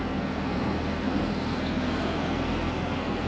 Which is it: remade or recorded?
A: remade